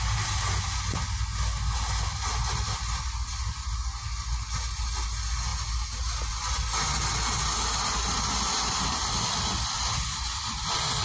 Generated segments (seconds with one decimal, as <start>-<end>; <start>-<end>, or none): none